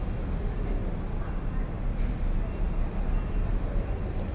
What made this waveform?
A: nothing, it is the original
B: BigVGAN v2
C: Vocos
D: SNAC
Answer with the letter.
A